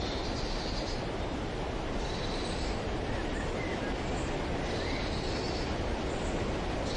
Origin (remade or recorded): recorded